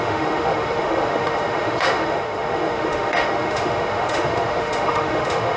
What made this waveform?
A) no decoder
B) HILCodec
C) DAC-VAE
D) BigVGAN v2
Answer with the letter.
C